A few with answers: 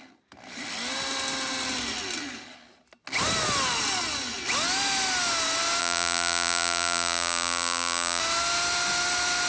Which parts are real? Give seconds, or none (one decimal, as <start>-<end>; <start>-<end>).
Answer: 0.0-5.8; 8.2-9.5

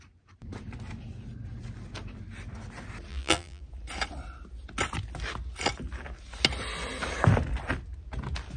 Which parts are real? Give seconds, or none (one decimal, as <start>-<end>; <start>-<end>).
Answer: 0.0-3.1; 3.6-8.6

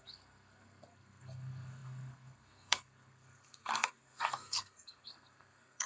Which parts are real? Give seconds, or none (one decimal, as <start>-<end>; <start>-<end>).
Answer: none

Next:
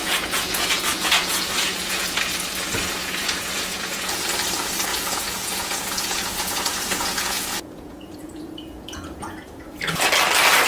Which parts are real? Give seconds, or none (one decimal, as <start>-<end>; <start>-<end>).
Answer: 2.2-3.0; 4.2-4.9; 10.0-10.7

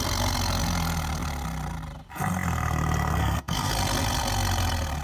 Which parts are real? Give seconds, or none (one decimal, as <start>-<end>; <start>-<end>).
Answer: 0.0-3.2; 3.7-5.0